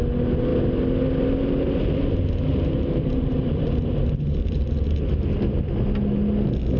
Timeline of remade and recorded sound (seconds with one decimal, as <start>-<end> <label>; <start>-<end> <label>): 0.0-2.5 recorded; 2.5-5.2 remade; 5.2-6.8 recorded

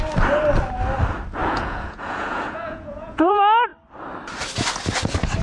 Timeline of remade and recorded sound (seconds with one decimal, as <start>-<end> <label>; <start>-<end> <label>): 0.0-1.4 recorded; 1.4-3.3 remade; 3.3-5.4 recorded